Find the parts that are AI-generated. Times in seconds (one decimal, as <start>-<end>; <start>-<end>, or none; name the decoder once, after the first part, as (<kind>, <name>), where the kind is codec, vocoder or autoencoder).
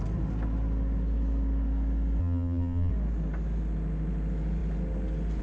2.2-2.9 (vocoder, BigVGAN v2)